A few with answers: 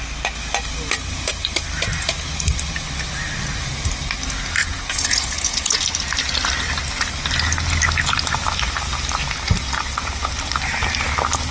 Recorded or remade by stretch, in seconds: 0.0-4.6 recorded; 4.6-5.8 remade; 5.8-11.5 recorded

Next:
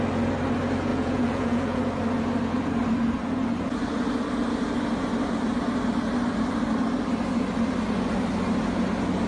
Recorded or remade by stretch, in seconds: 0.0-0.9 recorded; 0.9-1.8 remade; 1.8-9.3 recorded

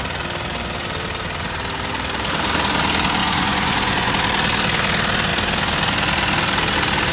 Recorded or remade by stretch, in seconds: 0.0-3.2 recorded; 3.2-4.1 remade; 4.1-7.1 recorded

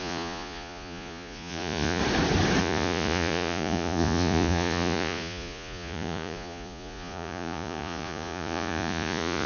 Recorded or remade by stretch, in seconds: 0.0-2.0 remade; 2.0-2.6 recorded; 2.6-9.5 remade

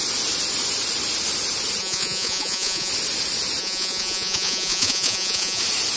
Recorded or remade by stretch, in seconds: 0.0-1.8 recorded; 1.8-2.9 remade; 2.9-3.6 recorded; 3.6-5.6 remade; 5.6-6.0 recorded

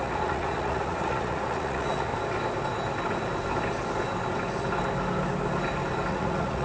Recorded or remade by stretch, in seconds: 0.0-2.1 remade; 2.1-6.1 recorded; 6.1-6.6 remade

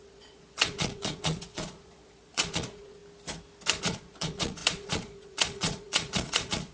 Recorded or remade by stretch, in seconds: 0.0-3.0 remade; 3.0-3.8 recorded; 3.8-6.7 remade